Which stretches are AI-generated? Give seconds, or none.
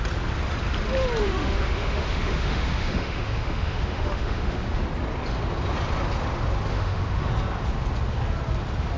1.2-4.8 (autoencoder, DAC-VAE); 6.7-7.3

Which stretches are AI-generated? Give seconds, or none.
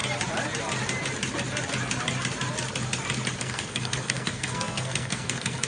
3.4-5.7 (codec, SNAC)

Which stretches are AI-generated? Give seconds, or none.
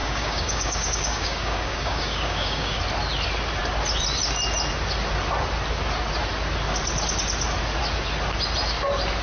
0.0-2.8 (codec, DAC)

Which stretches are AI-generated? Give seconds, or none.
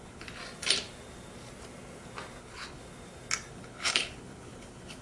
0.0-0.4 (codec, HILCodec); 2.4-2.8; 3.5-5.0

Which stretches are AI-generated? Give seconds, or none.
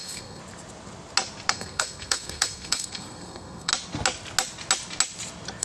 0.0-0.4 (codec, SNAC); 1.5-3.7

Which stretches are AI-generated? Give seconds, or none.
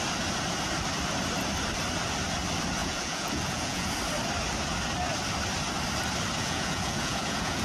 2.8-3.9 (vocoder, Vocos); 6.4-7.6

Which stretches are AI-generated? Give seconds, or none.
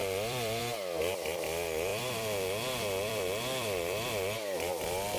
0.0-0.6 (vocoder, BigVGAN v2); 1.9-5.2